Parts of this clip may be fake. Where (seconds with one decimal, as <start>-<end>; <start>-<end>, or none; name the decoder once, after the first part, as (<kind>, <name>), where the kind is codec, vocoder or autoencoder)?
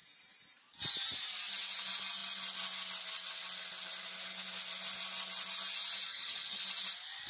6.1-6.6 (vocoder, HiFi-GAN)